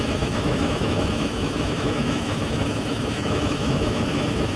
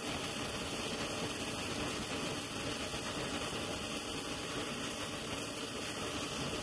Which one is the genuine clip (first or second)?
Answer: second